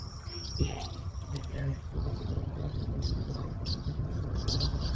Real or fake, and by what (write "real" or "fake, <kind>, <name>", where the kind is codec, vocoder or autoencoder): fake, vocoder, HiFi-GAN